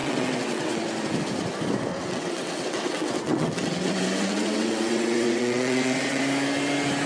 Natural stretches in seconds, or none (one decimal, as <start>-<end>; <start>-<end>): 0.8-1.9; 6.2-7.1